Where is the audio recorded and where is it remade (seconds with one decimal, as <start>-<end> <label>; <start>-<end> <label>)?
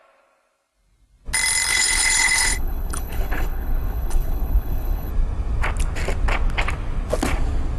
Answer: 0.0-1.7 recorded; 1.7-5.1 remade; 5.1-7.8 recorded